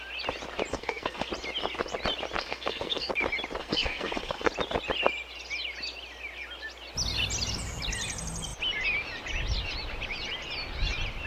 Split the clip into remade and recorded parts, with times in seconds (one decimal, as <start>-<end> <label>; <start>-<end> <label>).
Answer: 0.0-0.7 recorded; 0.7-1.3 remade; 1.3-2.4 recorded; 2.4-3.1 remade; 3.1-3.6 recorded; 3.6-4.5 remade; 4.5-11.3 recorded